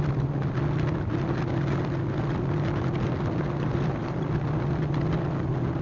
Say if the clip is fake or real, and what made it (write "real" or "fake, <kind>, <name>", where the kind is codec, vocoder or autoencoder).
real